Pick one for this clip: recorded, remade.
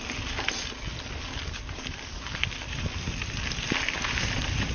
recorded